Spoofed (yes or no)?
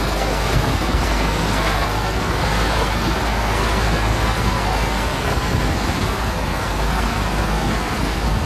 yes